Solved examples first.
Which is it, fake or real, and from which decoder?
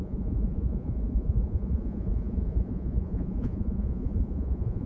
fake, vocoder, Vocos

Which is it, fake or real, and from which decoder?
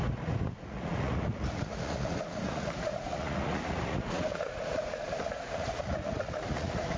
fake, vocoder, Vocos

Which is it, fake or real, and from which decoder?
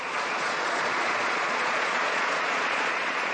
fake, vocoder, Vocos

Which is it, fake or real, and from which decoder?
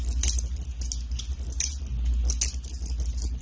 real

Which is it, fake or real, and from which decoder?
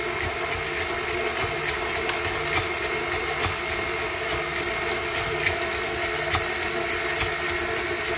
real